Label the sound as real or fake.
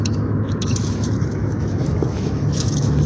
fake